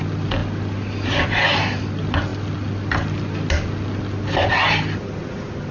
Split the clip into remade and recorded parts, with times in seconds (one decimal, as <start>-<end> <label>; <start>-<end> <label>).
0.0-5.7 recorded

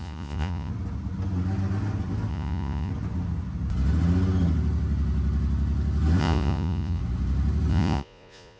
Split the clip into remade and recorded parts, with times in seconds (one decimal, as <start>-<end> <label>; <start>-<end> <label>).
0.0-0.7 remade; 0.7-2.3 recorded; 2.3-2.9 remade; 2.9-6.2 recorded; 6.2-7.0 remade; 7.0-7.7 recorded; 7.7-8.6 remade

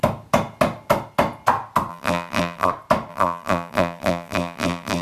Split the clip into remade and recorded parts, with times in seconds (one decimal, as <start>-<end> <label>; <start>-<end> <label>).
0.0-1.9 recorded; 1.9-2.7 remade; 2.7-3.1 recorded; 3.1-5.0 remade

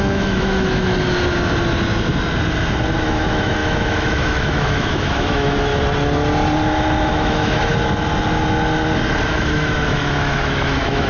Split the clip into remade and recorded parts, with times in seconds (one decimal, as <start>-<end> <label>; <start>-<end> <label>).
0.0-0.9 remade; 0.9-3.0 recorded; 3.0-5.7 remade; 5.7-7.1 recorded; 7.1-7.7 remade; 7.7-9.3 recorded; 9.3-11.1 remade

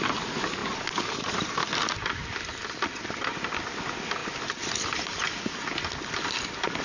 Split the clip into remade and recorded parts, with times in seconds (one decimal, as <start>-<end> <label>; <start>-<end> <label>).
0.0-6.8 recorded

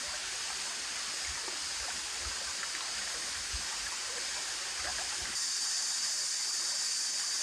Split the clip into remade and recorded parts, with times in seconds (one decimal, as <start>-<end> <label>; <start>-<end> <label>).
0.0-4.9 recorded; 4.9-5.5 remade; 5.5-7.4 recorded

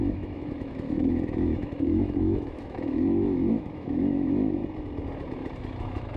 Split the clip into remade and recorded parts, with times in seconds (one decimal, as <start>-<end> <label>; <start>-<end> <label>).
0.0-4.6 remade; 4.6-5.8 recorded; 5.8-6.2 remade

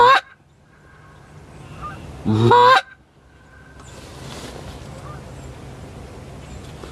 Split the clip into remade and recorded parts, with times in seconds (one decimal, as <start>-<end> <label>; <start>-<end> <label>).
0.0-6.9 recorded